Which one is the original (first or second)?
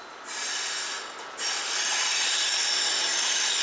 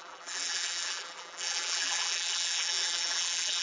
first